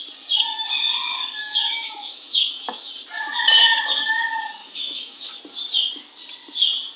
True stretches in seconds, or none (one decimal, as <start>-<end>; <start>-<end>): 0.0-1.4; 2.9-4.6; 5.3-7.0